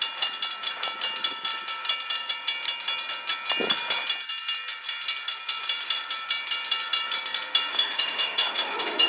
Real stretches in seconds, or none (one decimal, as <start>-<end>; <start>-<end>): 0.0-7.7